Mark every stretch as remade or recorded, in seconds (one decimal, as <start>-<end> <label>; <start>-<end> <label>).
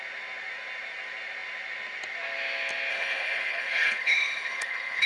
0.0-2.9 recorded; 2.9-5.1 remade